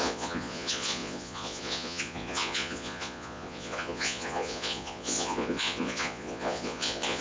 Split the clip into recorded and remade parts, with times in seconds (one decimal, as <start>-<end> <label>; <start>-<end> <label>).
0.0-7.2 remade